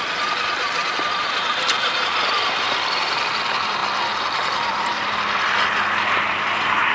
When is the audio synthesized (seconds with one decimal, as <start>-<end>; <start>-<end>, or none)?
0.8-3.3